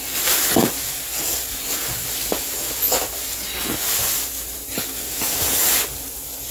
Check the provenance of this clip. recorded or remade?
recorded